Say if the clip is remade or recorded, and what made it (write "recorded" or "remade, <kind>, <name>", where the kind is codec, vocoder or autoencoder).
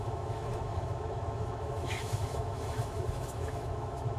remade, autoencoder, DAC-VAE